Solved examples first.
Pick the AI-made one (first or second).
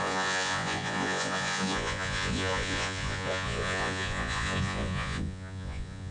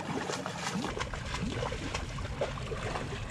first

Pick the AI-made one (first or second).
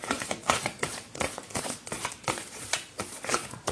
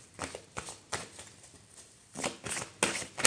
first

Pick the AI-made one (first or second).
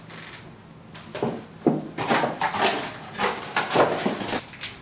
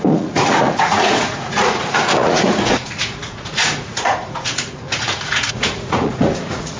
second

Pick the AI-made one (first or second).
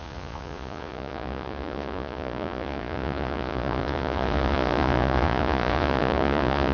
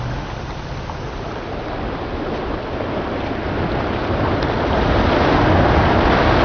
first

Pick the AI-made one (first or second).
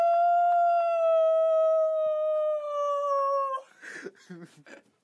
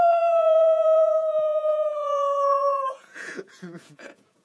second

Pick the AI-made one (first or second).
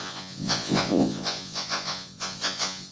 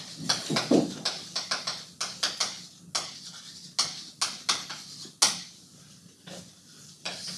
first